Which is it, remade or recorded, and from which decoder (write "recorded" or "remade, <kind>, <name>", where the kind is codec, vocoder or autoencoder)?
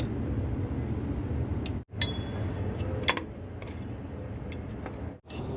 recorded